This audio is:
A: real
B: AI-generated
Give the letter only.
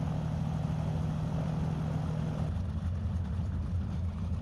A